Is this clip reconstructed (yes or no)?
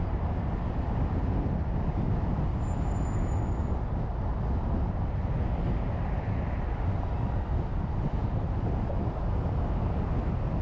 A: no